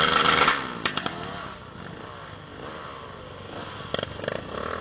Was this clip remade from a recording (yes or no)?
no